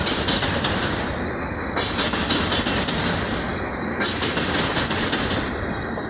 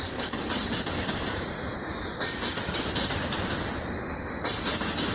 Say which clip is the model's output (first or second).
second